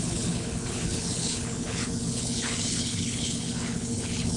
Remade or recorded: remade